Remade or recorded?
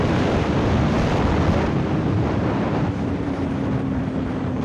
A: remade